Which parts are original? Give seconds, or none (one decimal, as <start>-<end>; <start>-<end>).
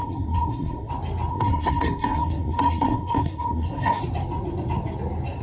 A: 0.9-1.3; 4.0-5.4